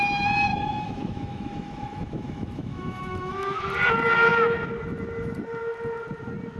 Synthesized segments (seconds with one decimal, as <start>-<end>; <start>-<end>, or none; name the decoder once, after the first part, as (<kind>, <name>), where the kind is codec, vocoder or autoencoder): 0.5-3.6 (autoencoder, DAC-VAE)